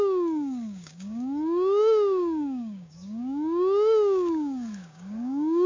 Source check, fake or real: fake